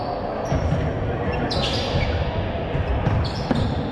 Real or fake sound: real